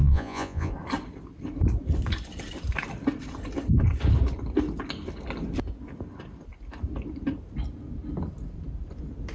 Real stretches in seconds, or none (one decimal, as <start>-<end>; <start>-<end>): 0.7-9.3

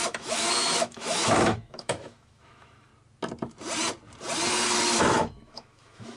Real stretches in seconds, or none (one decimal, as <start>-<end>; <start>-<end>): 2.9-5.0

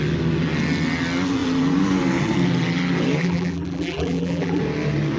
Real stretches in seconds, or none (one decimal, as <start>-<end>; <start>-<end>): 0.0-3.2; 4.6-5.2

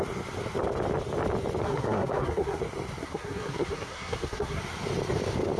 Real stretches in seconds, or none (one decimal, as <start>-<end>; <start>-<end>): 0.0-1.6; 2.6-3.0; 4.6-5.6